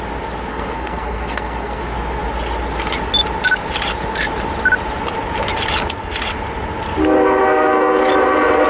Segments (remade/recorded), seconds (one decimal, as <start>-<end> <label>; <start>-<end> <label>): 0.0-0.5 recorded; 0.5-1.8 remade; 1.8-7.4 recorded; 7.4-8.1 remade; 8.1-8.7 recorded